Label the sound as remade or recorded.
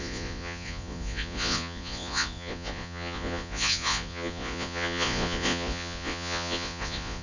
remade